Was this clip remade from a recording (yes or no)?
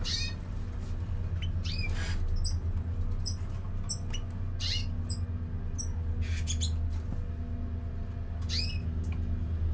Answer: no